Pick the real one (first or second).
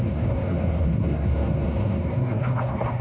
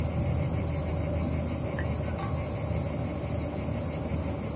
second